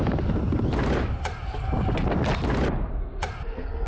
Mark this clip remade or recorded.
recorded